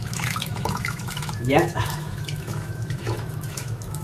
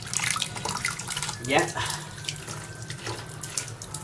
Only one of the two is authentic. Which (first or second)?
second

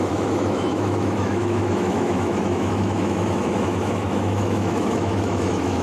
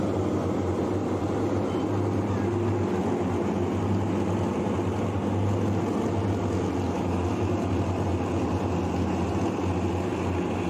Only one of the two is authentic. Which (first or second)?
second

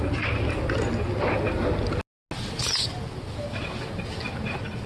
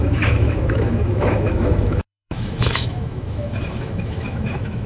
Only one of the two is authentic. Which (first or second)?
first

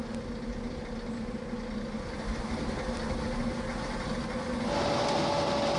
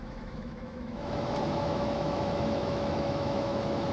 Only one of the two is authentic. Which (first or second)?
first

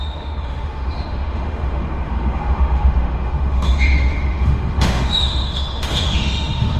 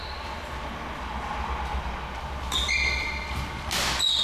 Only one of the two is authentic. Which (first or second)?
second